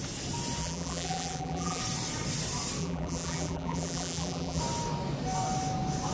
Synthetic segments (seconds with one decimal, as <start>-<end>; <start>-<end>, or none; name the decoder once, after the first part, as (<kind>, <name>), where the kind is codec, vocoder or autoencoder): 0.6-1.8 (vocoder, BigVGAN v2); 2.8-4.6